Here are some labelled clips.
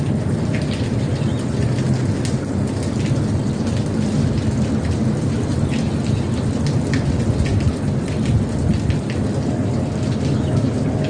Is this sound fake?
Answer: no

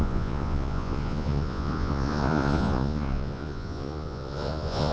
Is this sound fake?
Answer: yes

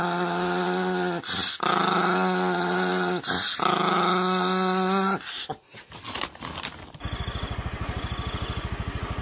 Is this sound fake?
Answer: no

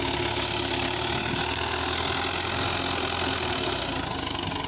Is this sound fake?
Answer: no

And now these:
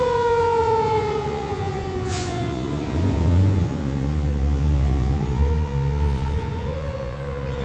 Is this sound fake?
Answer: yes